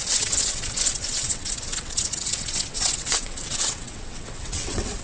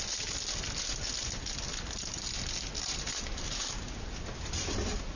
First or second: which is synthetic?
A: first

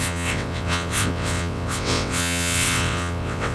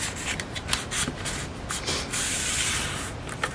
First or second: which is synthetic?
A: first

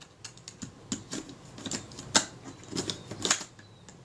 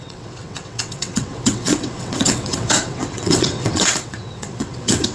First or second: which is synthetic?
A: second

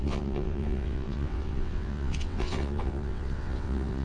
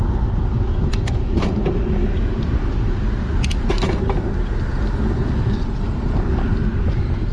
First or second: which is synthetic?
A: first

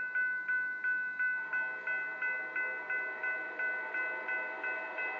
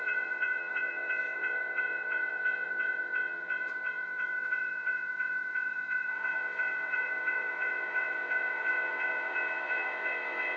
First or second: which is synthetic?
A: second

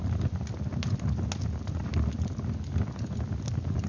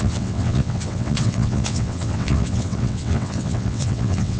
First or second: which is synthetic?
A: second